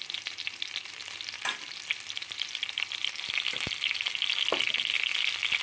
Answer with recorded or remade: recorded